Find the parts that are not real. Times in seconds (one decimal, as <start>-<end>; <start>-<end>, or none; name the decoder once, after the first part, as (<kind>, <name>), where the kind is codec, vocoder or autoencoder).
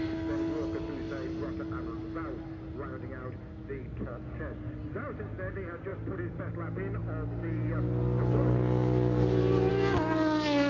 5.9-6.5 (vocoder, BigVGAN v2)